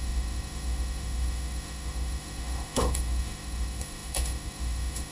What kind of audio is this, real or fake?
fake